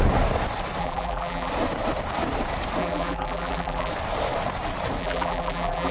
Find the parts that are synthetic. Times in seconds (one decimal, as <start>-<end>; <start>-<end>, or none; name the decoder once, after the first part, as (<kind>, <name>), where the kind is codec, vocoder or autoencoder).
0.8-1.5 (vocoder, BigVGAN v2); 2.8-3.9; 5.0-5.9